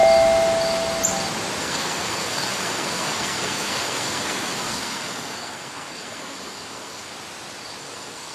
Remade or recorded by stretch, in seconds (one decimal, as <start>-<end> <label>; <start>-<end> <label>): 0.0-1.6 recorded; 1.6-7.1 remade; 7.1-7.8 recorded; 7.8-8.3 remade

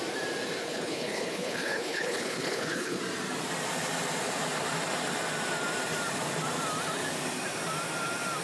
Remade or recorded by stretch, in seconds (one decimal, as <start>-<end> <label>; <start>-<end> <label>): 0.0-0.6 recorded; 0.6-3.0 remade; 3.0-8.4 recorded

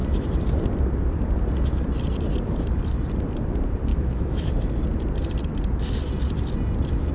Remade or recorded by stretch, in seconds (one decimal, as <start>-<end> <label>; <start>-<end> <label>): 0.0-3.9 recorded; 3.9-4.5 remade; 4.5-7.1 recorded